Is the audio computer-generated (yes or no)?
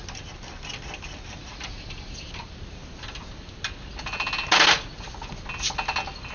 no